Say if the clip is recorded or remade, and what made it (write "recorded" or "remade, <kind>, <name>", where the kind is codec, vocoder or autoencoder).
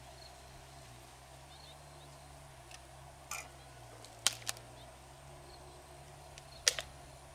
recorded